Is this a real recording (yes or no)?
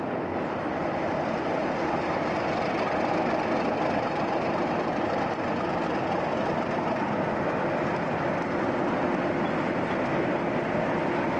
yes